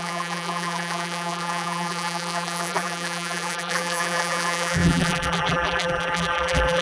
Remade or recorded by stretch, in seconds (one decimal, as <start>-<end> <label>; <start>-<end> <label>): 0.0-6.8 remade